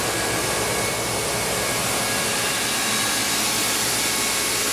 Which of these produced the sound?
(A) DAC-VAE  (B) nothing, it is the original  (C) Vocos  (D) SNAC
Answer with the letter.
B